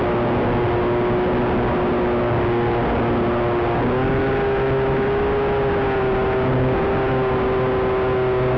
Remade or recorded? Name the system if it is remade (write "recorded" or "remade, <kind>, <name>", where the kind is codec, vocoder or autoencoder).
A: recorded